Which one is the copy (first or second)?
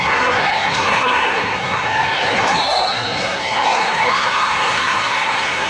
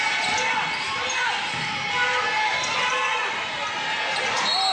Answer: first